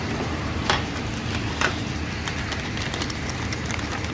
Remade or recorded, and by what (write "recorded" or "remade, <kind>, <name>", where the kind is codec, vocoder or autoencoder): recorded